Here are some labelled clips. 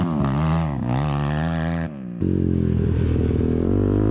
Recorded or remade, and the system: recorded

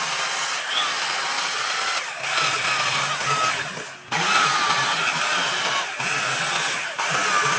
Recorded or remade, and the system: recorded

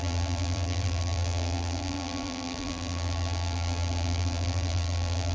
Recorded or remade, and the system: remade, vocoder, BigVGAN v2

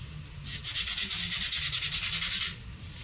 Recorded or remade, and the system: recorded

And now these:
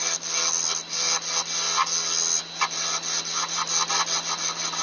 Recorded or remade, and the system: recorded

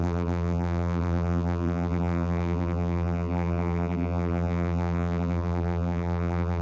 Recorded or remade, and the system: remade, vocoder, BigVGAN v2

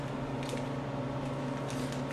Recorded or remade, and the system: recorded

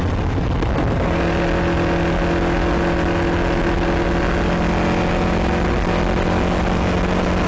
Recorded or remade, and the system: recorded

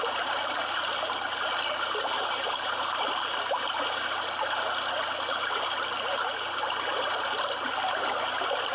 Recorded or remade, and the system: remade, vocoder, BigVGAN v2